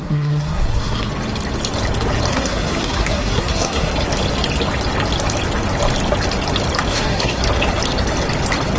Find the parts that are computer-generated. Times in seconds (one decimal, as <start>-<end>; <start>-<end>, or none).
0.0-1.1; 2.3-3.9; 6.9-7.4